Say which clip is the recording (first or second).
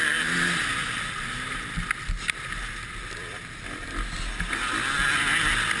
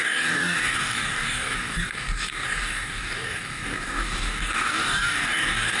first